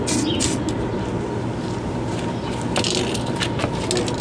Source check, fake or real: real